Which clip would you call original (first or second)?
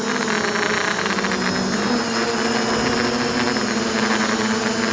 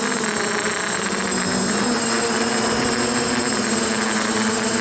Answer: first